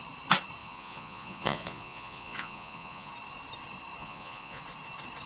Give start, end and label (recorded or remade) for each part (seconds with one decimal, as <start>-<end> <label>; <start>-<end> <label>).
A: 0.0-0.6 recorded; 0.6-3.1 remade; 3.1-4.0 recorded; 4.0-4.6 remade; 4.6-5.3 recorded